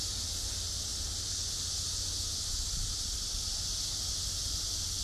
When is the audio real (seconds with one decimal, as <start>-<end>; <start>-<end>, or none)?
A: 0.0-5.0